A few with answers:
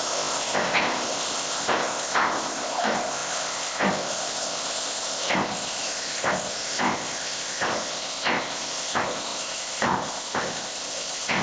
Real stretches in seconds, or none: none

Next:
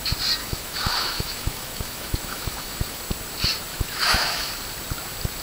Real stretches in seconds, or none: 0.0-0.4; 3.0-3.7; 4.5-5.4